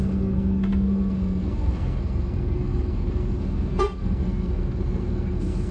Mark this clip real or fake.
fake